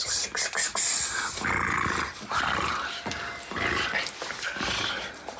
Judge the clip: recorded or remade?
recorded